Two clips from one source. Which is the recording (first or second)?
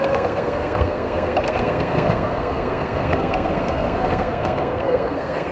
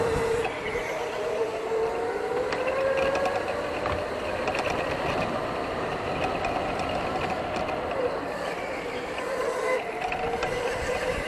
second